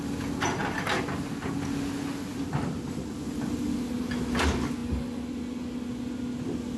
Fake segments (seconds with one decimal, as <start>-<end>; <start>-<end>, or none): none